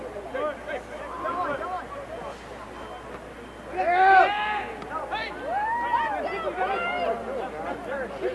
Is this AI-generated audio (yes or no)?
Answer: no